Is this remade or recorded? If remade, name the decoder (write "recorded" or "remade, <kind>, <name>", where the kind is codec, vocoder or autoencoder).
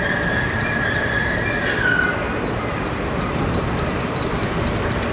recorded